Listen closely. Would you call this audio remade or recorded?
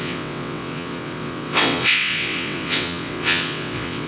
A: remade